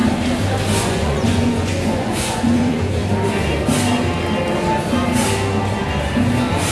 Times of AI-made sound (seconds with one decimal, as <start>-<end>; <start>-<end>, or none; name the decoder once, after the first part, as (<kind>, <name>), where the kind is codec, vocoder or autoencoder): 0.8-3.0 (vocoder, Vocos)